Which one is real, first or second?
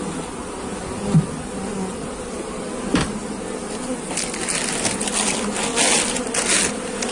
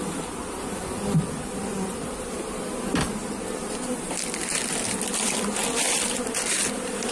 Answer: first